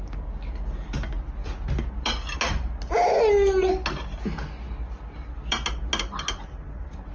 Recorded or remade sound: recorded